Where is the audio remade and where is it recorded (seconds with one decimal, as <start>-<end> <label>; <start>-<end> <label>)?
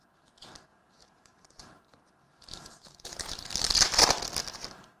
0.0-0.7 recorded; 0.7-3.7 remade; 3.7-5.0 recorded